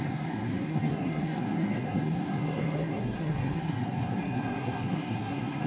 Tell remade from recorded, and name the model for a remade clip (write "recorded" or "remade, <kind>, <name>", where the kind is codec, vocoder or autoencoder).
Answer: remade, codec, SNAC